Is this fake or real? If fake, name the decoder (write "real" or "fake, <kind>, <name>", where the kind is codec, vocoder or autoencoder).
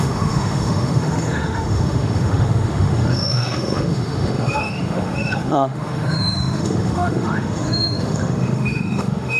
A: fake, autoencoder, DAC-VAE